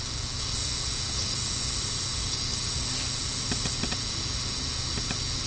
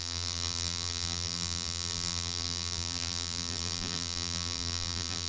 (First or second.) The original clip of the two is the first